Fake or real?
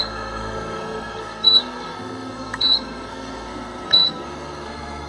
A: fake